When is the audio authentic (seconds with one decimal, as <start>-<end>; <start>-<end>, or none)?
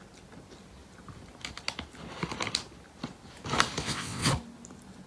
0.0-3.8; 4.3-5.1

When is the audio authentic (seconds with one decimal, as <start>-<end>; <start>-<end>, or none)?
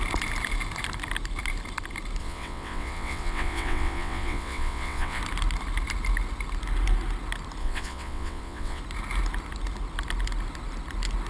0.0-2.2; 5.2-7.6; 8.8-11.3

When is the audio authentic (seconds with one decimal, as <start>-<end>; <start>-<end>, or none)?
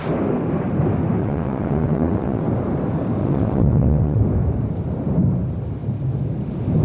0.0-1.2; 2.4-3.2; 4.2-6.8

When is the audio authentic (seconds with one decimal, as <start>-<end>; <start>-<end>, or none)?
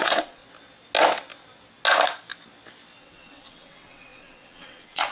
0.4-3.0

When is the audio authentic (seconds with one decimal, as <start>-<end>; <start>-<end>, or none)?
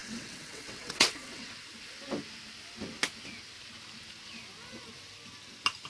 1.5-5.9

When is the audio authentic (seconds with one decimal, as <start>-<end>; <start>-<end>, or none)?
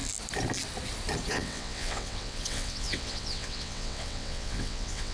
0.0-1.3